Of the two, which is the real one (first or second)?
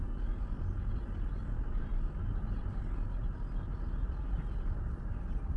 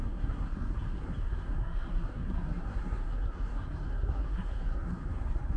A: first